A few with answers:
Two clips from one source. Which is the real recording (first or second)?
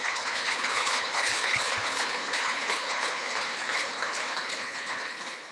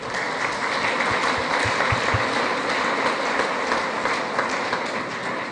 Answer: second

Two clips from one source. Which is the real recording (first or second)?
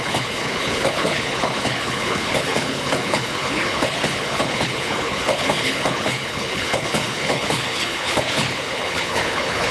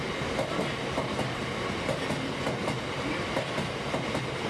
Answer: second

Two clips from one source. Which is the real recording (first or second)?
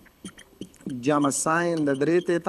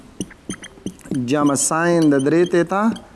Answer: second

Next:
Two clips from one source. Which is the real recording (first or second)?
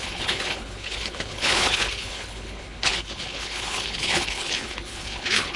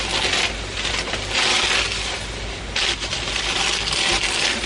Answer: second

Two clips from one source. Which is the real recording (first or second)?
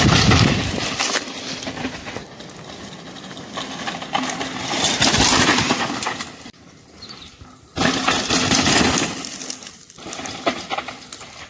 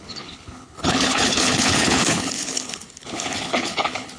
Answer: first